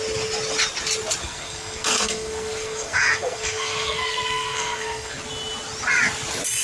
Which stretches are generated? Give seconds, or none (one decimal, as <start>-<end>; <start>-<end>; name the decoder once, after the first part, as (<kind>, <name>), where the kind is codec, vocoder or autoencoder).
1.2-5.2 (codec, SNAC)